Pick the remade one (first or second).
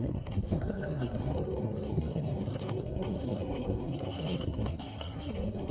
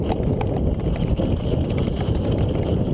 first